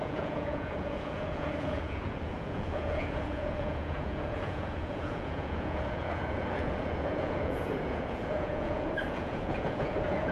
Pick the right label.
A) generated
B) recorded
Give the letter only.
A